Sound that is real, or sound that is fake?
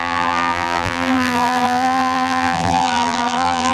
fake